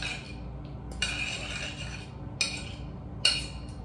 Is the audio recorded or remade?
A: recorded